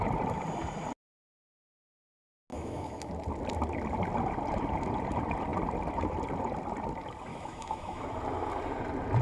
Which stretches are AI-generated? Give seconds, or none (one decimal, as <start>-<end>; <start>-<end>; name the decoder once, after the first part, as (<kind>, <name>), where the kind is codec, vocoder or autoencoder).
2.5-3.1 (autoencoder, DAC-VAE); 7.3-8.0